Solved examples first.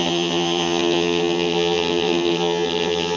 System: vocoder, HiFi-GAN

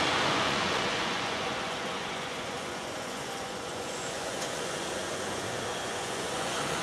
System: vocoder, Vocos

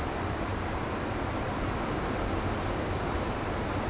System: none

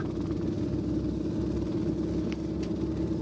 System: none